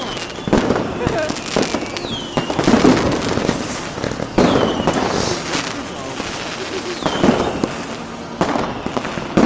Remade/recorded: recorded